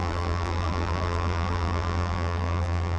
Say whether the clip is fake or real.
fake